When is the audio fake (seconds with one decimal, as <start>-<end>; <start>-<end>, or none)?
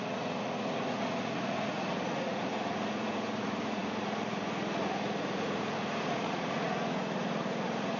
0.0-8.0